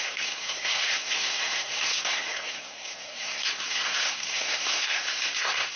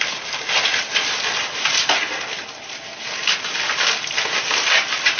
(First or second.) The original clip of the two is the second